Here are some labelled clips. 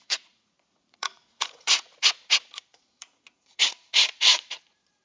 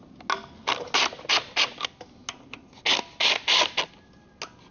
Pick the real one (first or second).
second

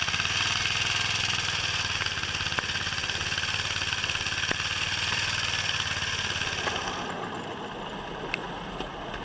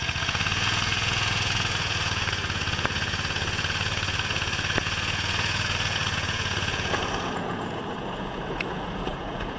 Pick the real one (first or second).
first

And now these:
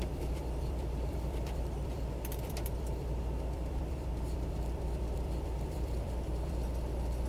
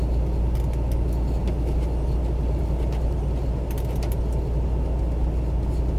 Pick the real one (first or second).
second